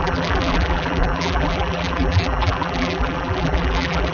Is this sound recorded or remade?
remade